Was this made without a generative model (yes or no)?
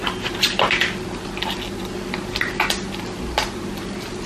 yes